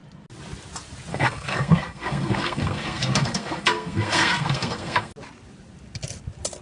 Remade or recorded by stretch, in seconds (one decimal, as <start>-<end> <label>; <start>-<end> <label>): 0.0-1.1 recorded; 1.1-5.1 remade; 5.1-6.6 recorded